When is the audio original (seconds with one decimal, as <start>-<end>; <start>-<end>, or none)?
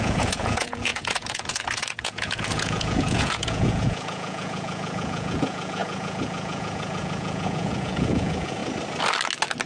8.6-9.7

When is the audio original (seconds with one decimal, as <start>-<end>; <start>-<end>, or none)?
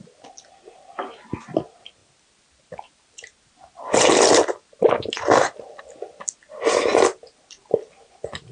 0.0-8.5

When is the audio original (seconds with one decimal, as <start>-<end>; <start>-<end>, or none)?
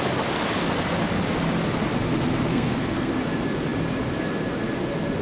0.0-2.5; 3.1-5.2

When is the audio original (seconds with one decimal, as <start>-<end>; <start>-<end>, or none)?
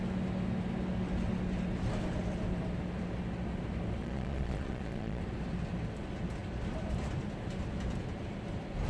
0.0-4.0; 5.2-8.9